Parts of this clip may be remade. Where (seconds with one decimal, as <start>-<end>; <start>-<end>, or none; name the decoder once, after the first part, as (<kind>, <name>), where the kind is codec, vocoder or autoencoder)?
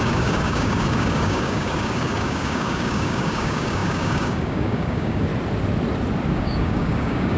0.0-5.3 (codec, DAC); 6.3-7.4